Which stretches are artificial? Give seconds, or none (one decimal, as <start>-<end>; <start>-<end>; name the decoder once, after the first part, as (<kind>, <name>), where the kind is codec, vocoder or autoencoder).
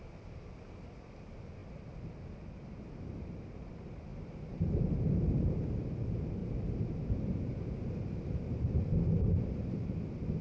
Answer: 4.1-5.8 (vocoder, BigVGAN v2)